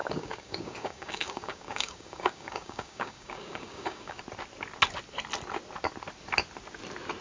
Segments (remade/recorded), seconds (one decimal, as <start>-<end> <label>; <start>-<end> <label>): 0.0-4.2 remade; 4.2-7.2 recorded